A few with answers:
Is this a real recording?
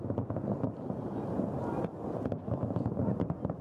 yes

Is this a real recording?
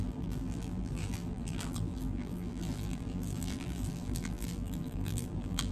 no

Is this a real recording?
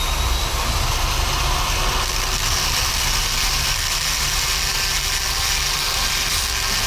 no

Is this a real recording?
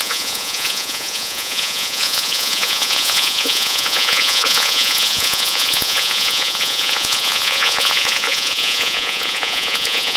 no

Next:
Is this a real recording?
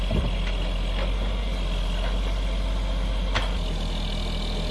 yes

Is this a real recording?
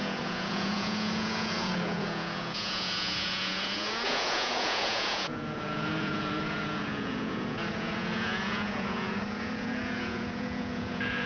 no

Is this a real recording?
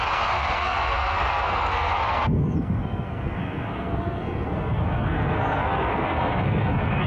no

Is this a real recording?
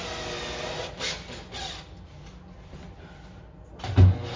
yes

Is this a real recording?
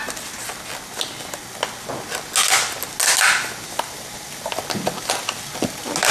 yes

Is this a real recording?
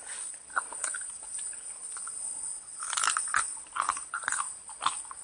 yes